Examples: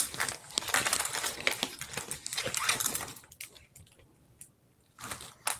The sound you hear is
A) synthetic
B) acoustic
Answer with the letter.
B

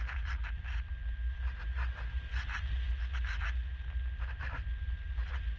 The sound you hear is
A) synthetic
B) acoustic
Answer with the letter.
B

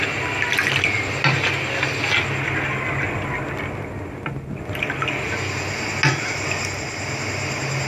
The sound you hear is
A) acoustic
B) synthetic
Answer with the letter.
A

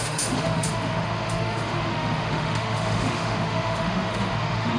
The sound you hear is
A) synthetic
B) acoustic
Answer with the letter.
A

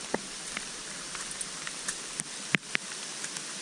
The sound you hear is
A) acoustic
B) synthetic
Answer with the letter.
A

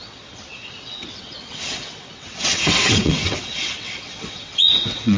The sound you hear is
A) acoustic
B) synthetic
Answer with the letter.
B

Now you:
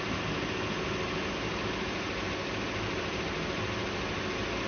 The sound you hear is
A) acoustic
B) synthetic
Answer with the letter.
A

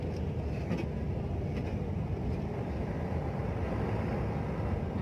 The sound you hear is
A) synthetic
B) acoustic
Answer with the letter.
B